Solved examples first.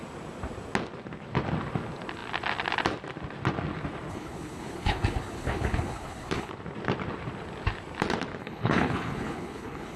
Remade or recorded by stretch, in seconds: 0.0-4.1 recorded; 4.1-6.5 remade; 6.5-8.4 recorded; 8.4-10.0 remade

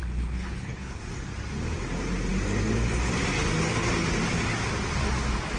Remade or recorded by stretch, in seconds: 0.0-1.0 remade; 1.0-5.6 recorded

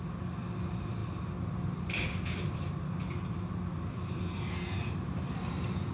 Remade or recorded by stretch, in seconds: 0.0-5.9 recorded

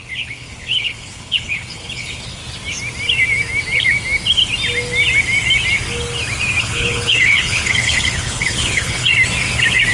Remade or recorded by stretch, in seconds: 0.0-2.4 remade; 2.4-6.6 recorded; 6.6-9.1 remade; 9.1-9.9 recorded